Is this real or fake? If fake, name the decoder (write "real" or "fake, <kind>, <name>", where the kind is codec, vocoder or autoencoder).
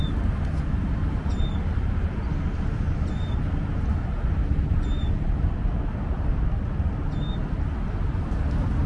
real